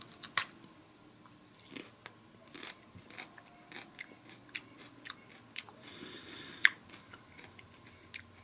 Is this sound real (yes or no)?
yes